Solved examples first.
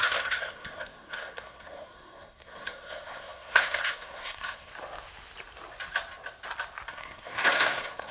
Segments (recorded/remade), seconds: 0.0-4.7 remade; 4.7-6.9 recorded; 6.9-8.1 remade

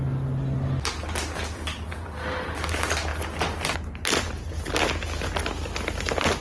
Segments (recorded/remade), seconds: 0.0-6.4 recorded

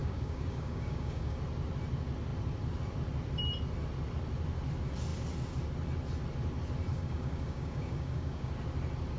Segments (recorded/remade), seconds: 0.0-1.4 remade; 1.4-6.9 recorded; 6.9-8.5 remade; 8.5-9.2 recorded